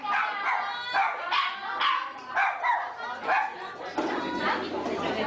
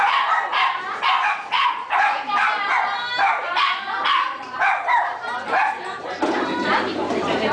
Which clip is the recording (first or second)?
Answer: first